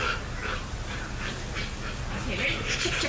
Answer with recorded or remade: recorded